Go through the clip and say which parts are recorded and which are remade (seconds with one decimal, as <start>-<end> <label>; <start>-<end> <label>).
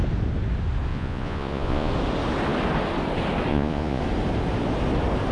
0.0-0.9 recorded; 0.9-1.9 remade; 1.9-3.5 recorded; 3.5-4.0 remade; 4.0-5.3 recorded